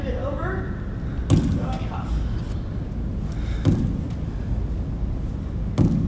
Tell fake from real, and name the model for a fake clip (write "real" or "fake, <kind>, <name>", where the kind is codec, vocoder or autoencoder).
real